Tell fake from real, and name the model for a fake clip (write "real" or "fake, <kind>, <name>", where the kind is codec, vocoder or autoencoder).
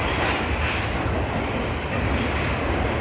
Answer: real